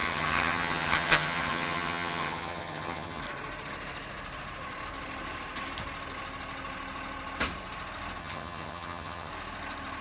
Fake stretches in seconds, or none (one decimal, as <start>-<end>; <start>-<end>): 0.0-3.2; 8.2-9.3